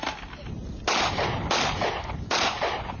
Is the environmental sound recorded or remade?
recorded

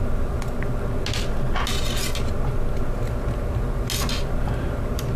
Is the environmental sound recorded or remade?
recorded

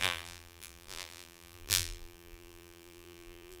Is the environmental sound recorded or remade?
remade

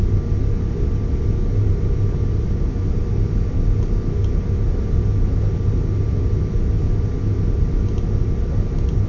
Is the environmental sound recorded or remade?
recorded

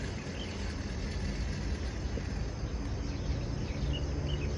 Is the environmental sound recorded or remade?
recorded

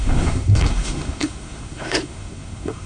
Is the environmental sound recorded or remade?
remade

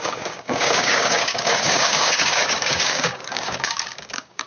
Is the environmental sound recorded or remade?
remade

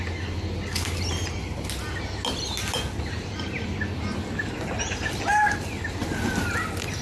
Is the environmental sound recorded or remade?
recorded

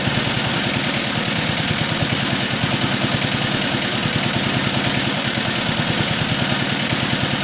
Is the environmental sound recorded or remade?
recorded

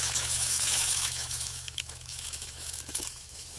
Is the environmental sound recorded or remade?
remade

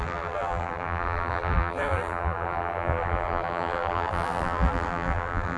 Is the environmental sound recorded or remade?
remade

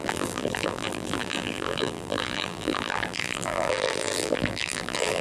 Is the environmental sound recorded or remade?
remade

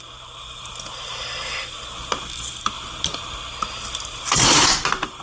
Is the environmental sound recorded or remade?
recorded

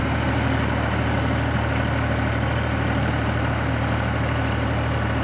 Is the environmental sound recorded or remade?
recorded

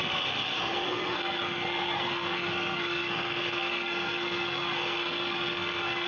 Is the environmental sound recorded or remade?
remade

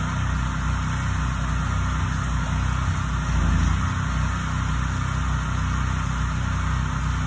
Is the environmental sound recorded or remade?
recorded